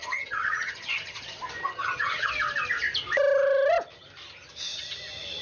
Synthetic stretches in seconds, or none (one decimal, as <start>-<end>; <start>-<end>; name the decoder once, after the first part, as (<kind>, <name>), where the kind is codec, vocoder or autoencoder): 0.0-1.2 (vocoder, HiFi-GAN); 1.6-2.3